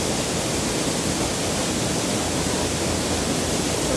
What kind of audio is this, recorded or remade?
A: recorded